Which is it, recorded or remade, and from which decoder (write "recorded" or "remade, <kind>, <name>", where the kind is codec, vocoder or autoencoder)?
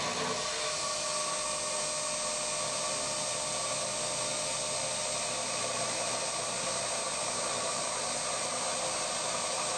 recorded